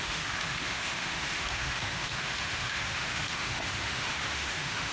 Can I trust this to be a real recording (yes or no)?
no